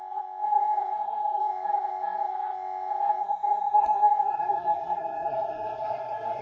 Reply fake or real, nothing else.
fake